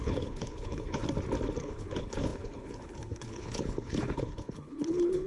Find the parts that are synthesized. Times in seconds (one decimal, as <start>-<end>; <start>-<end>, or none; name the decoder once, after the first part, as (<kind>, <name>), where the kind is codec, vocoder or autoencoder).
0.0-1.0 (codec, HILCodec); 1.6-5.3